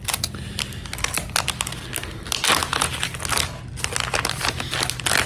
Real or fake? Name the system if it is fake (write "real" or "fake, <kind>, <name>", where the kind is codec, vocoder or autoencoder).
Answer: real